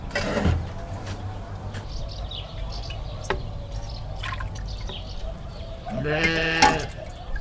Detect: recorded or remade recorded